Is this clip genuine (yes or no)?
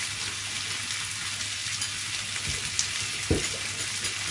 yes